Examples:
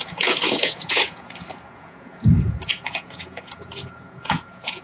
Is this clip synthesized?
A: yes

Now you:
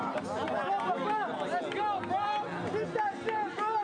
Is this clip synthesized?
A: no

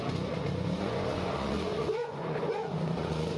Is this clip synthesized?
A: yes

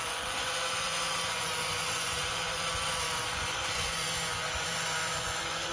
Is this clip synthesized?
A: yes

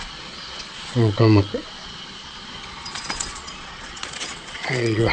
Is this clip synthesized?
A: yes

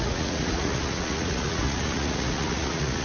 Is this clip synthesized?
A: yes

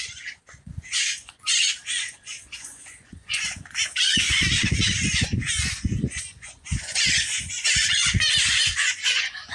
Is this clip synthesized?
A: yes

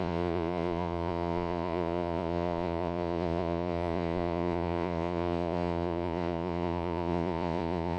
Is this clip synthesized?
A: yes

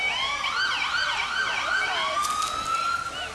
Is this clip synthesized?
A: no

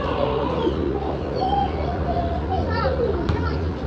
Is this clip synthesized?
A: yes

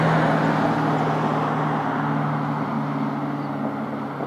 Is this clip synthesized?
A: no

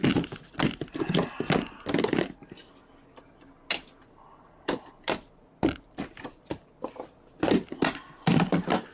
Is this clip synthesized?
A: no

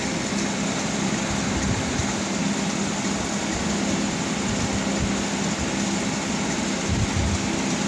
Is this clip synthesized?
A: no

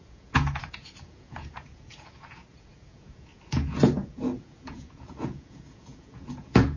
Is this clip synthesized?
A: yes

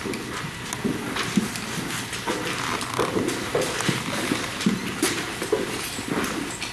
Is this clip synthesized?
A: no